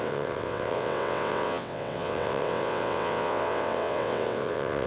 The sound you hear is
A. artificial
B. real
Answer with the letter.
A